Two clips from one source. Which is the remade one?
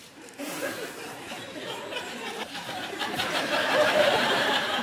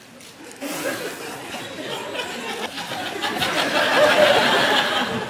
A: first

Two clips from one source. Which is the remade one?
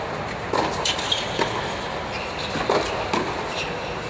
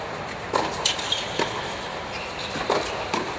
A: second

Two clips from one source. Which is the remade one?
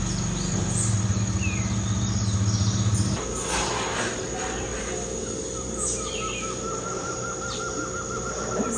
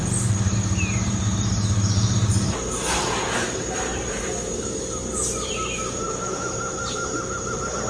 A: second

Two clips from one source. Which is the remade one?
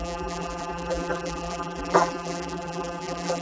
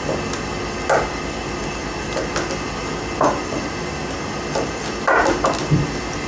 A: first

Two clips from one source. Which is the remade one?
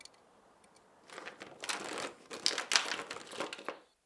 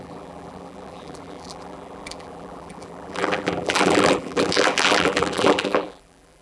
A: second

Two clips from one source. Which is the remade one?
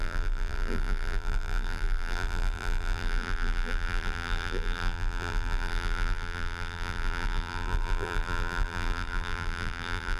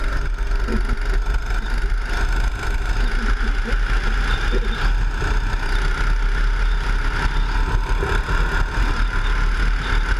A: first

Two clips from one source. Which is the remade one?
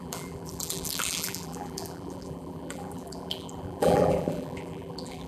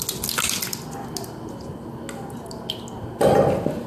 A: first